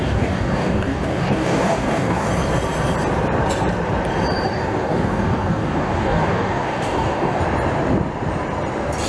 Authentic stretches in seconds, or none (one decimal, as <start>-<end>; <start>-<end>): 2.3-4.5; 7.4-9.1